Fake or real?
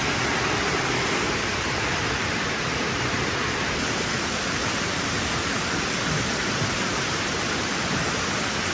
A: real